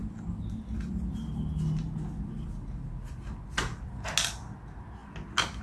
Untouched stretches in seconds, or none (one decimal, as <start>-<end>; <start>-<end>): 0.0-5.6